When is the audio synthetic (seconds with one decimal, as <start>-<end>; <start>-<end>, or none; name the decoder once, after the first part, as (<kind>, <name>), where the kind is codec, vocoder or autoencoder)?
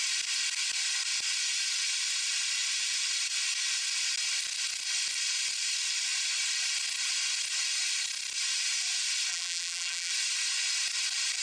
9.3-10.1 (vocoder, BigVGAN v2)